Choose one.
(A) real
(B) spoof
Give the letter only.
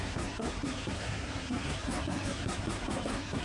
B